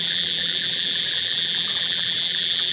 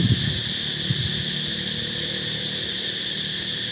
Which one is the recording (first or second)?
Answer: second